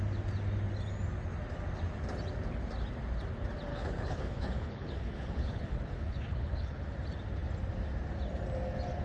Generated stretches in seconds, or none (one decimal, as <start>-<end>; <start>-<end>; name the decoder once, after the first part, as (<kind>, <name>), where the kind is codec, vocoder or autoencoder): 3.7-6.8 (codec, HILCodec)